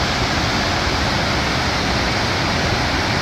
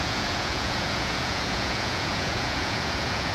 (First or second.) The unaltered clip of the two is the first